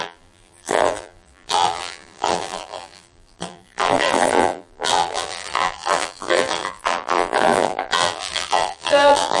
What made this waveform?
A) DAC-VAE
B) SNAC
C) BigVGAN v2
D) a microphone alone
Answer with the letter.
C